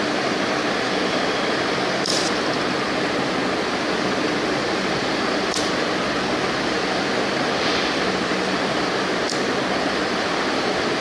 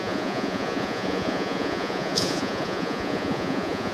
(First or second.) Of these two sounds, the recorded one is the first